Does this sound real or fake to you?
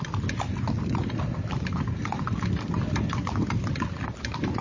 real